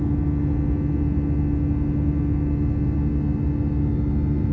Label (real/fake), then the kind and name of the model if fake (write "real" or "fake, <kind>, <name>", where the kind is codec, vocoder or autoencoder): real